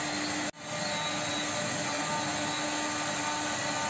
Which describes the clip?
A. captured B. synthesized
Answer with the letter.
A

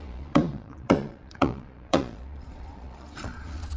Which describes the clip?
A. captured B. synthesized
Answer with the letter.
B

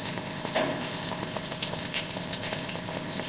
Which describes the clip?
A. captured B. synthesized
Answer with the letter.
B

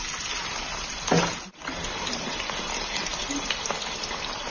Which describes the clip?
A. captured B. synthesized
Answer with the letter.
A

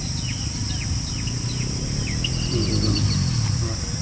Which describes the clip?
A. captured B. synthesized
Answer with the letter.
A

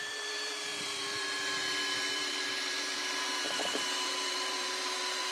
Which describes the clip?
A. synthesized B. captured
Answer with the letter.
A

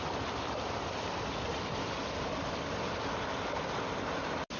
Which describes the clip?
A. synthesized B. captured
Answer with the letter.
B